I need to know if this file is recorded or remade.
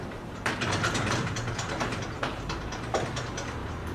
remade